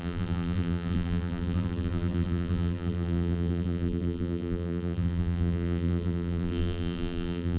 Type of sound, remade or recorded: remade